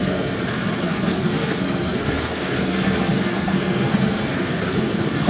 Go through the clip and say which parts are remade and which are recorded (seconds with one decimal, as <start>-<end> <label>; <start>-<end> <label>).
0.0-5.3 remade